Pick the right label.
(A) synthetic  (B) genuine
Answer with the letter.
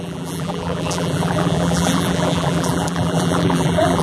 A